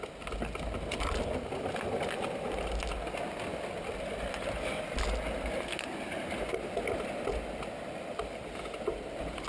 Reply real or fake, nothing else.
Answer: real